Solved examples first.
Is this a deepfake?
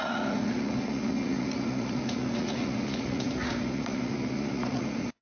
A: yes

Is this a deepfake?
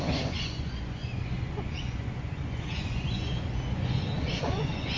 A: yes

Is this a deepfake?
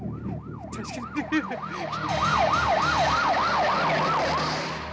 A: no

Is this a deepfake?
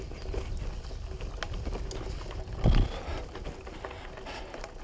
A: no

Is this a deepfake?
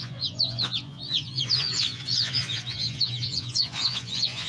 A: yes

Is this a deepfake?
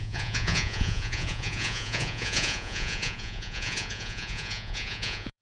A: yes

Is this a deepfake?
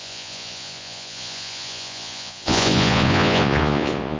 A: yes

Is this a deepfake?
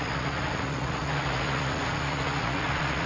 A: yes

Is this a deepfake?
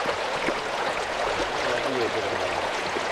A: yes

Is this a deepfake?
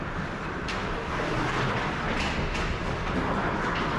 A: no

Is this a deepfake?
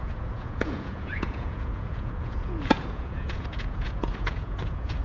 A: yes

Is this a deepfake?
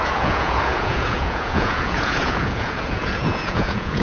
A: yes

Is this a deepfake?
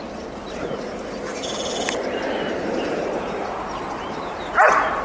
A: no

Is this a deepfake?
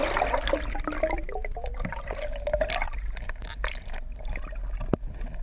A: no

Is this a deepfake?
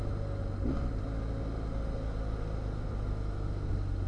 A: no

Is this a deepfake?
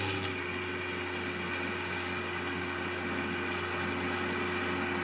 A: no